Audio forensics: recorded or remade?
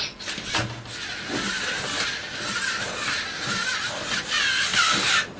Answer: recorded